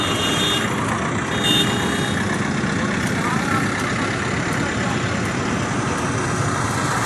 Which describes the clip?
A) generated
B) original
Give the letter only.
B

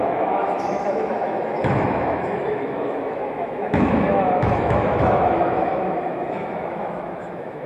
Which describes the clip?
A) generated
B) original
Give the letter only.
A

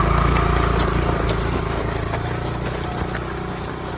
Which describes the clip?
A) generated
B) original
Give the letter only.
B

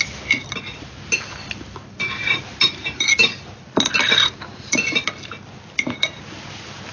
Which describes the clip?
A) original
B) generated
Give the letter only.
A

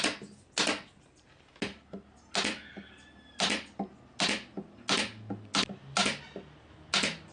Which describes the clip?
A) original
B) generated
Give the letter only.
A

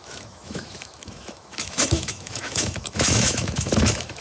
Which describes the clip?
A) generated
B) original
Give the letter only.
A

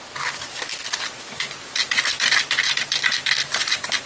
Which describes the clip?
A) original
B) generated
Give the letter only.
A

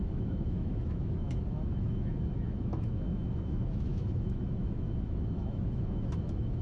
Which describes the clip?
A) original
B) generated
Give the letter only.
B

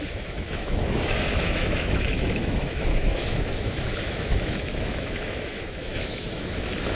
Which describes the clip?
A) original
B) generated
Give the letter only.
B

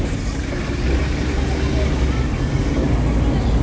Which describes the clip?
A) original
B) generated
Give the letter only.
A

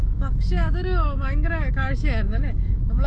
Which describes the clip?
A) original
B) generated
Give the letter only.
B